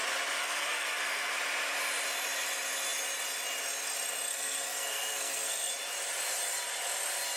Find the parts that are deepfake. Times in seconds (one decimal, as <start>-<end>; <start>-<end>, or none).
0.4-1.3; 4.3-5.7

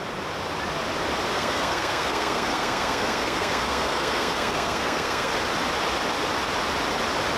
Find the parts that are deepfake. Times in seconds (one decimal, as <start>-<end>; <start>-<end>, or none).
1.3-5.3

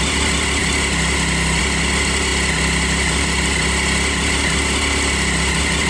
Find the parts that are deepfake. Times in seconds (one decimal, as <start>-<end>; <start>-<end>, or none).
none